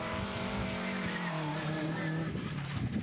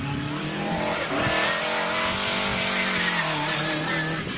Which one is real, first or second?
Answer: second